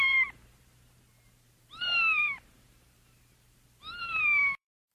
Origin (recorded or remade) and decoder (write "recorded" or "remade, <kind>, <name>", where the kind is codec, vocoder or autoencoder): remade, vocoder, BigVGAN v2